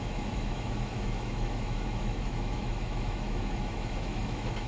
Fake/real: fake